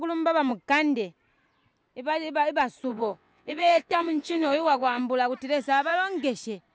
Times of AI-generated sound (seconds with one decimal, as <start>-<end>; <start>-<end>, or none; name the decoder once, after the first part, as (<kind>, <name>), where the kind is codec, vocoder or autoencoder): 2.9-5.0 (vocoder, WaveNeXt)

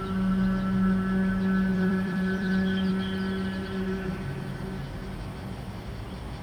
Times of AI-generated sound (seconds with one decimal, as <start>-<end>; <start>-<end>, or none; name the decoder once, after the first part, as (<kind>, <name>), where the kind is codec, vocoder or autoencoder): 1.7-2.9 (vocoder, BigVGAN v2)

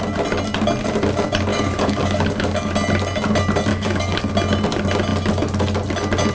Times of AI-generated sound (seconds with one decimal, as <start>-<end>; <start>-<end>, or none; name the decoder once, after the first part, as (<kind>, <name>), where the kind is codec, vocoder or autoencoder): 1.5-2.7 (codec, DAC); 3.7-4.3

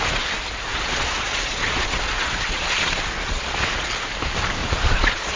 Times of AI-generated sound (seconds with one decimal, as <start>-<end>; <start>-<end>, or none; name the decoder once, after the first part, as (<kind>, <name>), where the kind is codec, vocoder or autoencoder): 0.7-3.9 (vocoder, Vocos); 4.6-5.4

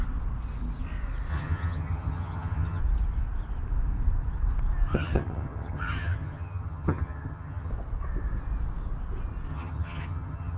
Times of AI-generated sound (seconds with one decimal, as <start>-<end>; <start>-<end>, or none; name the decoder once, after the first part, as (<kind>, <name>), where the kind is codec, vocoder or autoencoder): 1.3-2.8 (vocoder, HiFi-GAN); 4.9-7.7; 9.5-10.6

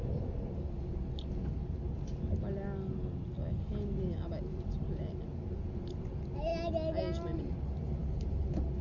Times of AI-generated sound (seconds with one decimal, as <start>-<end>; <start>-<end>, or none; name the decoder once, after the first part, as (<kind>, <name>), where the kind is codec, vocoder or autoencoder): none